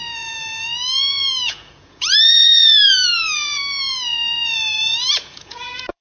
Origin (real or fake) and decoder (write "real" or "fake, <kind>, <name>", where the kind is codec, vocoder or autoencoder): fake, vocoder, Vocos